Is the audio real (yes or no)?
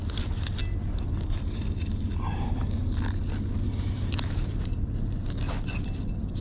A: yes